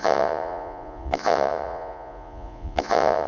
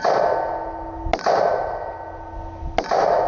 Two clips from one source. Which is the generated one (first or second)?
first